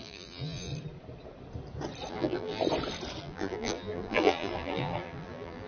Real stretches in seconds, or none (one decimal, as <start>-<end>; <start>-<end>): 0.7-2.1; 2.6-3.2

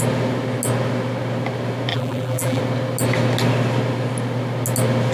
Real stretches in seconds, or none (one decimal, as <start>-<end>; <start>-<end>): 0.0-1.9; 2.6-5.1

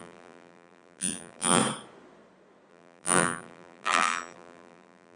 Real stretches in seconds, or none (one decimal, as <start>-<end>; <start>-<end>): 1.6-2.7

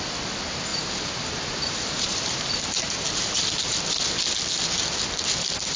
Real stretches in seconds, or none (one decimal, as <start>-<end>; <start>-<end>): 0.0-0.7; 3.5-5.8

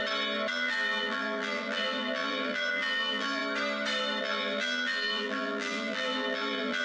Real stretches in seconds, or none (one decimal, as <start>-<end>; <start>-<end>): 0.0-0.5; 3.4-4.2

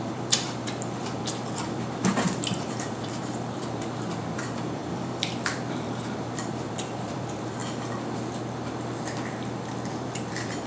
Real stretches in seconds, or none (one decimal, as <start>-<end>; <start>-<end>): 7.6-9.7

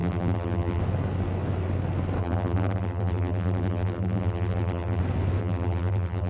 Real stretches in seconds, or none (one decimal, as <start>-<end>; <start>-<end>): 0.8-2.2; 5.0-5.4

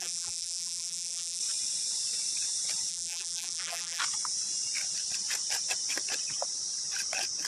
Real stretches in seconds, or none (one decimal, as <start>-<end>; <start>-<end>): 1.4-2.9; 4.0-7.5